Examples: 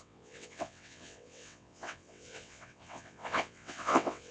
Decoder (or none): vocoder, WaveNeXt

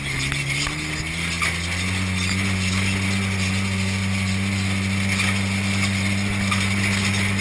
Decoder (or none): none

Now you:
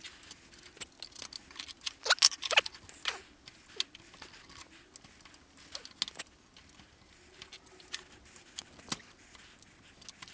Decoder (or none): none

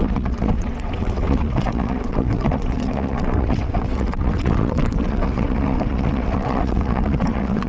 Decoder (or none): vocoder, WaveNeXt